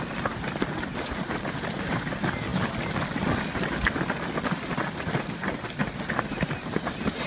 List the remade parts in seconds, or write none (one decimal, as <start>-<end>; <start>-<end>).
none